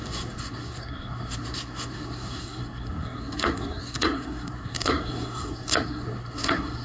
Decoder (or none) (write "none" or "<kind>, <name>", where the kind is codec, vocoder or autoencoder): codec, SNAC